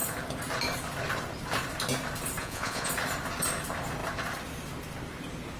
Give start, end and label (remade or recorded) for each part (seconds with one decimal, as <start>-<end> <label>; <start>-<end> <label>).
0.0-2.4 recorded; 2.4-2.9 remade; 2.9-5.6 recorded

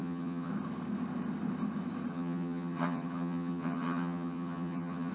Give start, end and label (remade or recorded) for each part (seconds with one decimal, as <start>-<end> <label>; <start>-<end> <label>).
0.0-0.5 remade; 0.5-2.1 recorded; 2.1-5.1 remade

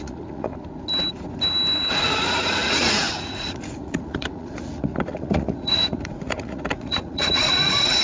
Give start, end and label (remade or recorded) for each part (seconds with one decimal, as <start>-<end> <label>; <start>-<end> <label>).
0.0-0.5 remade; 0.5-1.9 recorded; 1.9-8.0 remade

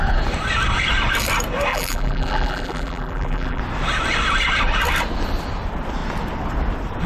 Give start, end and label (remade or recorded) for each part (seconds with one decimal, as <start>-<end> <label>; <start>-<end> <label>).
0.0-1.7 recorded; 1.7-3.6 remade; 3.6-7.1 recorded

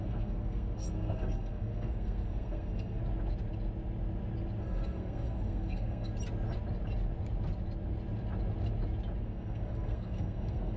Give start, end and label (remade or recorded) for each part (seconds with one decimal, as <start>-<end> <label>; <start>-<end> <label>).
0.0-3.0 remade; 3.0-4.6 recorded; 4.6-6.1 remade; 6.1-9.2 recorded; 9.2-10.8 remade

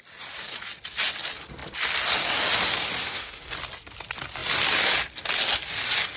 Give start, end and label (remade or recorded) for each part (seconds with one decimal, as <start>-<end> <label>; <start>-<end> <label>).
0.0-3.0 recorded; 3.0-3.5 remade; 3.5-6.2 recorded

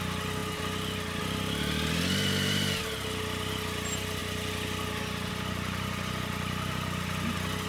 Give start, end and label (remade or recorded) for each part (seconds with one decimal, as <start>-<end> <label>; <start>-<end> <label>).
0.0-7.7 recorded